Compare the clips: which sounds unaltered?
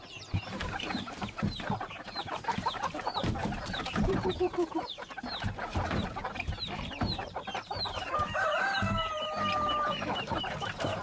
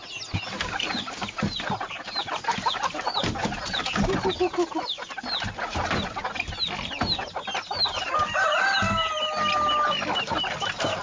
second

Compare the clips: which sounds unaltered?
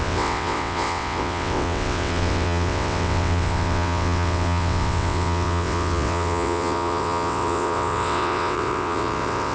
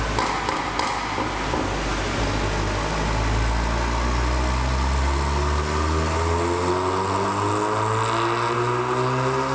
second